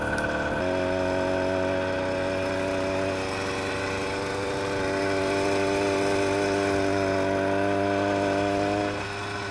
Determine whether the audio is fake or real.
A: real